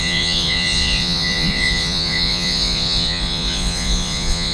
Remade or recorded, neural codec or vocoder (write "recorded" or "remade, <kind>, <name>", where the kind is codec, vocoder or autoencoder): remade, vocoder, Vocos